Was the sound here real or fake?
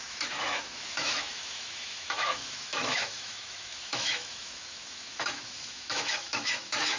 fake